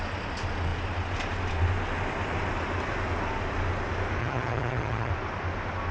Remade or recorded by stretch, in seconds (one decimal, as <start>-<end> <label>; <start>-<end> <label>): 0.0-4.2 recorded; 4.2-5.1 remade; 5.1-5.9 recorded